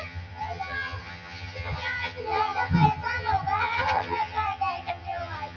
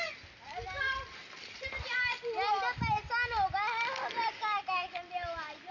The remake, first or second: first